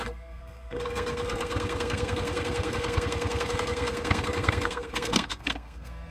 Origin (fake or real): fake